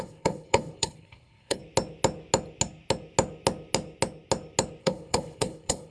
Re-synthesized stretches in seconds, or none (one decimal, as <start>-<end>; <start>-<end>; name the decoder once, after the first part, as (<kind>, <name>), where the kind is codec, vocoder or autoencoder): 0.0-1.6 (codec, HILCodec); 4.8-5.9